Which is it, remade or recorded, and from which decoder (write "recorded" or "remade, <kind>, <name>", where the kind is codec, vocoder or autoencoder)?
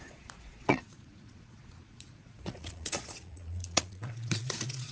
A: remade, vocoder, Vocos